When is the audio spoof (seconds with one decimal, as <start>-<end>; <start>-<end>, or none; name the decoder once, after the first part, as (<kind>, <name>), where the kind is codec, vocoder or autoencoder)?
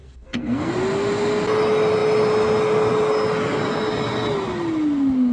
0.0-0.7 (codec, SNAC)